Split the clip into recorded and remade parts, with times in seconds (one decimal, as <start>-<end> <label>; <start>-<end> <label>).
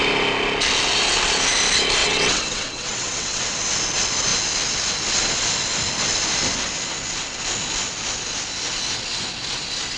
0.0-2.0 recorded; 2.0-3.4 remade; 3.4-10.0 recorded